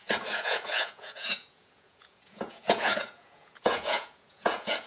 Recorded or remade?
remade